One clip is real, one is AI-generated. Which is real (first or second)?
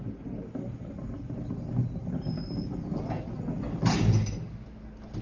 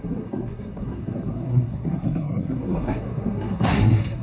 first